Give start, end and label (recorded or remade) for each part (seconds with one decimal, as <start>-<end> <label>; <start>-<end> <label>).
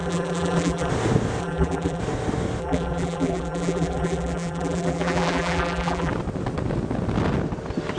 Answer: 0.0-0.9 remade; 0.9-1.4 recorded; 1.4-2.0 remade; 2.0-2.6 recorded; 2.6-6.1 remade; 6.1-8.0 recorded